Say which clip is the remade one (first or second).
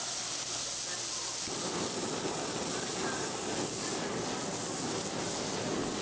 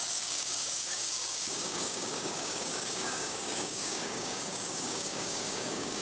second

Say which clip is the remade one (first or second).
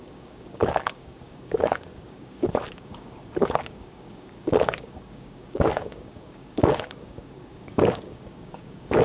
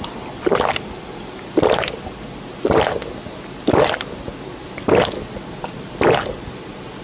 first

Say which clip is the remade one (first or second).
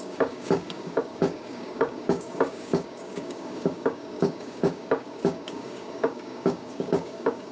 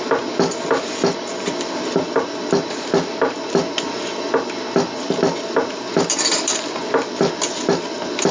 first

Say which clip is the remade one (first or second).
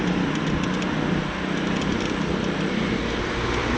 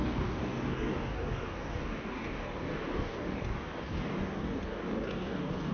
second